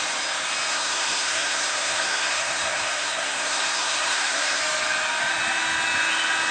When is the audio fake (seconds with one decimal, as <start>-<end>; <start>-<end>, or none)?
0.7-4.6